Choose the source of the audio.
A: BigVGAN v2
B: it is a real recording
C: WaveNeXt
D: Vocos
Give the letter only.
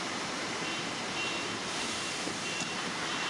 A